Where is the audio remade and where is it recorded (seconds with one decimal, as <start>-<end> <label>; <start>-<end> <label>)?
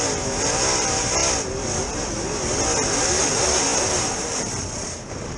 0.0-1.2 remade; 1.2-3.2 recorded; 3.2-5.4 remade